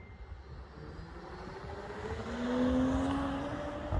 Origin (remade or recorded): recorded